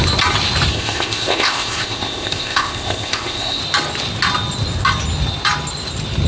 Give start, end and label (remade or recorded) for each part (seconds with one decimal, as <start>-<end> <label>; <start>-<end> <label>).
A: 0.0-0.7 recorded; 0.7-3.6 remade; 3.6-6.3 recorded

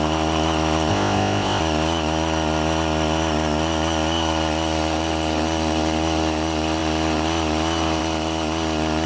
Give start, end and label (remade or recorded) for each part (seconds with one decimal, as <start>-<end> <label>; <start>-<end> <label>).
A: 0.0-0.9 recorded; 0.9-1.6 remade; 1.6-9.1 recorded

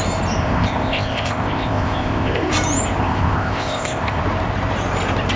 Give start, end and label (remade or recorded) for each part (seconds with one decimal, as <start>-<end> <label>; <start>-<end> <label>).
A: 0.0-0.4 recorded; 0.4-2.5 remade; 2.5-3.0 recorded; 3.0-4.2 remade; 4.2-5.4 recorded

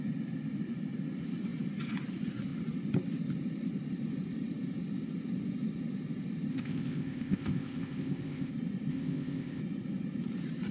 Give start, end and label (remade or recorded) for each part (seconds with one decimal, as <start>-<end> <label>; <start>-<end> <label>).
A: 0.0-6.5 recorded; 6.5-8.5 remade; 8.5-8.9 recorded; 8.9-9.6 remade; 9.6-10.7 recorded